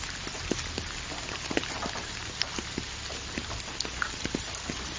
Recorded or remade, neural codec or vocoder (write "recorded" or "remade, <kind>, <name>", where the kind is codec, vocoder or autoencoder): recorded